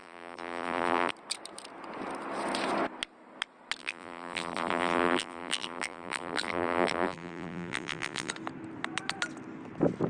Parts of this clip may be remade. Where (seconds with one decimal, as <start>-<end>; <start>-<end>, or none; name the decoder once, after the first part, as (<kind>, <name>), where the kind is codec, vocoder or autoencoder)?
0.0-1.1 (vocoder, BigVGAN v2); 3.8-8.3